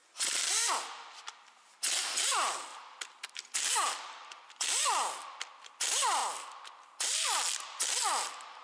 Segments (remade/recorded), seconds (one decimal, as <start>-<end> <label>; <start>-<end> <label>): 0.0-2.7 recorded; 2.7-4.5 remade; 4.5-6.2 recorded; 6.2-6.7 remade; 6.7-8.6 recorded